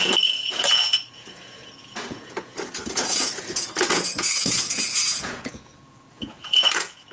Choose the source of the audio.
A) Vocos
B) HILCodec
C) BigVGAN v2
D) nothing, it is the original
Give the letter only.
A